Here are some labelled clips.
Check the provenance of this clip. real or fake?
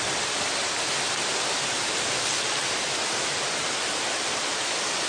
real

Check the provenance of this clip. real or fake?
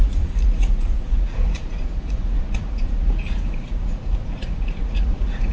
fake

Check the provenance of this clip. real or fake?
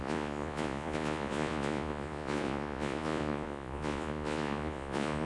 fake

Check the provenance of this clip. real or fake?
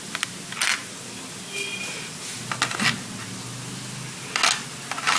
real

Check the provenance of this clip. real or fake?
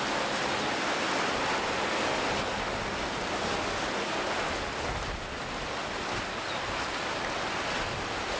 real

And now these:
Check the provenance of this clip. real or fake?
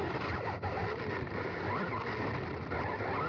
real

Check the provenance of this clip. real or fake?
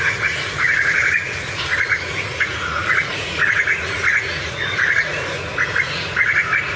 fake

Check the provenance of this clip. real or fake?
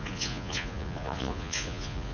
fake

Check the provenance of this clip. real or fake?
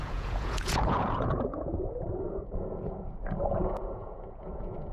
fake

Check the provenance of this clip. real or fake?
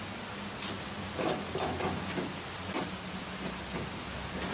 real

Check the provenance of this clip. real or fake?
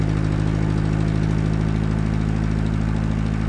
real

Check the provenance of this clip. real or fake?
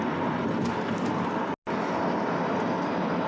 real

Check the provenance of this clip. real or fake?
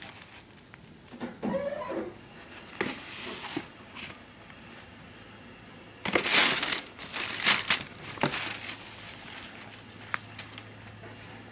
real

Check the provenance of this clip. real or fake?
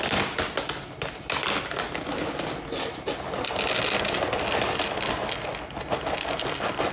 real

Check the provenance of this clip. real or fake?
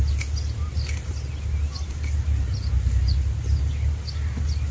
real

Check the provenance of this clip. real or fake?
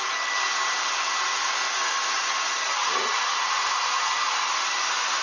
real